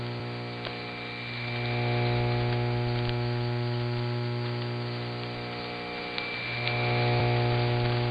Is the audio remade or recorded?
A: recorded